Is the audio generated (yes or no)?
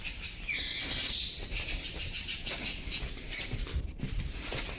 no